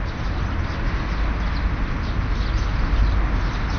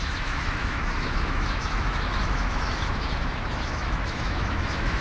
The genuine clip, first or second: first